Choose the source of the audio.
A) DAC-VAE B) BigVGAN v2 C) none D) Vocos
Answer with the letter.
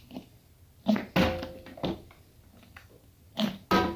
C